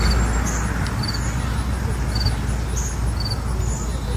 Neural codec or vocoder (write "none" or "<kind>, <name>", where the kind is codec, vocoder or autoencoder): none